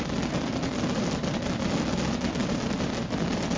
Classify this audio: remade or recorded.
recorded